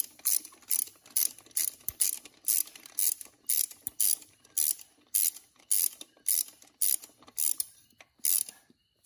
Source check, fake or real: real